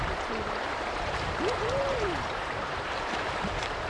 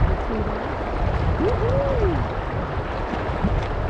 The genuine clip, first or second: second